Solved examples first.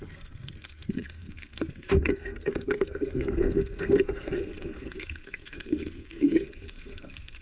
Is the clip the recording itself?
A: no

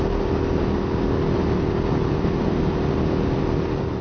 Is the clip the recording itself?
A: yes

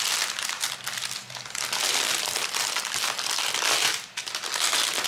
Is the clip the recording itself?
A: yes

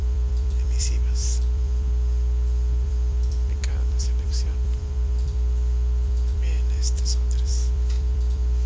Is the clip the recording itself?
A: no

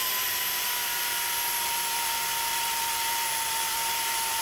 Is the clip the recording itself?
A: yes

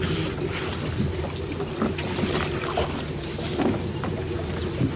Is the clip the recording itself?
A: yes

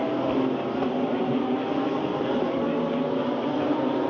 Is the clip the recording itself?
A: yes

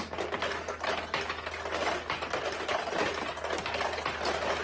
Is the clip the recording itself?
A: yes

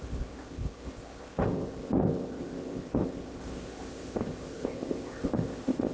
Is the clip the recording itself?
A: no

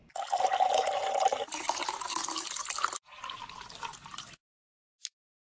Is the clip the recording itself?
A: yes